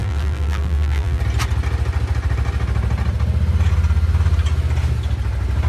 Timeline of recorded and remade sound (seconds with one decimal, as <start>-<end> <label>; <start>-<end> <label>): 0.0-1.2 remade; 1.2-5.7 recorded